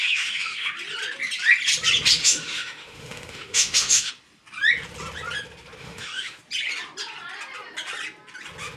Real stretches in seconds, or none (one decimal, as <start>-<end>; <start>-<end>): 0.7-2.2; 4.1-5.8; 6.4-8.8